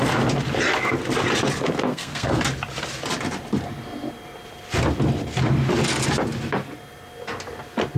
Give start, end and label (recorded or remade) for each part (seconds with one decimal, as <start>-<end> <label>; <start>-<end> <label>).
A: 0.0-1.9 recorded; 1.9-2.4 remade; 2.4-8.0 recorded